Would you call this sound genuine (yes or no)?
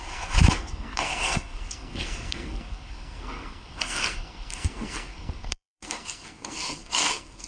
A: no